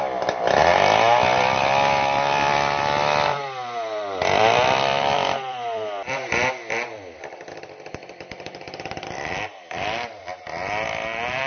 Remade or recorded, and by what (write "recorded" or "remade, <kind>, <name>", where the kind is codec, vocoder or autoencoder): remade, vocoder, BigVGAN v2